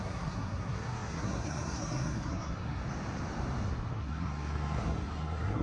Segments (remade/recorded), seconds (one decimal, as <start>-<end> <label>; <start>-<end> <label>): 0.0-2.8 remade; 2.8-3.9 recorded; 3.9-5.6 remade